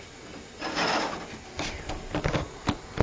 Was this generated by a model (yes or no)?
no